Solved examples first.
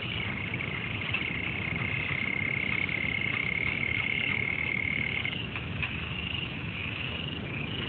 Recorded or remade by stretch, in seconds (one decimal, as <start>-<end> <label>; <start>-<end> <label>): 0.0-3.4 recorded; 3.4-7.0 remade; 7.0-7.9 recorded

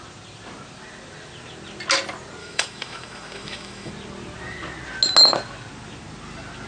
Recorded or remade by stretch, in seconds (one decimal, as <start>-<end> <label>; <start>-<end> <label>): 0.0-2.4 recorded; 2.4-3.9 remade; 3.9-6.7 recorded

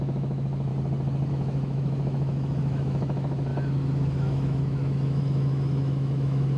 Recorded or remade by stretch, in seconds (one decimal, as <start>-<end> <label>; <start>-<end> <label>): 0.0-0.7 remade; 0.7-1.3 recorded; 1.3-6.6 remade

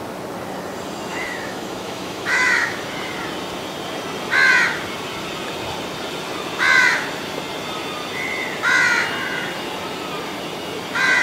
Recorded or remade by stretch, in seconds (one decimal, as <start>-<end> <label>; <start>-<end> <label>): 0.0-1.1 recorded; 1.1-2.8 remade; 2.8-11.2 recorded